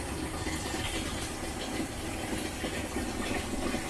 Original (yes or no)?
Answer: yes